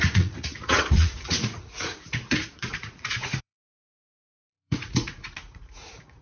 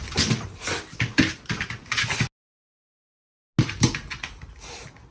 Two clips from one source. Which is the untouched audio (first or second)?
second